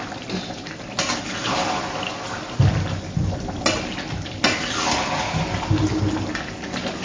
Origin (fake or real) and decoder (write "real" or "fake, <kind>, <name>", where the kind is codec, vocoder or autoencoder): real